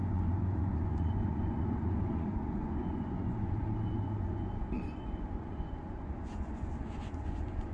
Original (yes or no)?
no